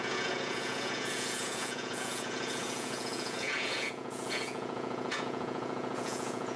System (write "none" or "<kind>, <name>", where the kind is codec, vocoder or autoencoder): vocoder, Vocos